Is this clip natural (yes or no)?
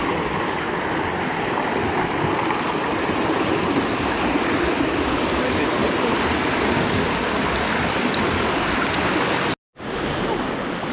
yes